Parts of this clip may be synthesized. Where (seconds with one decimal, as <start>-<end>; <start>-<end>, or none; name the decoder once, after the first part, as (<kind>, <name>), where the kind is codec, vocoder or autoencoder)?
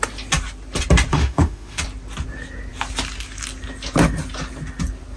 1.1-1.8 (autoencoder, DAC-VAE)